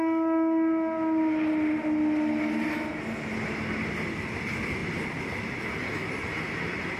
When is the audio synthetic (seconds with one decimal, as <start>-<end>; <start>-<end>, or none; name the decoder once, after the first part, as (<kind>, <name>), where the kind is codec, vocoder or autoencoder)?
none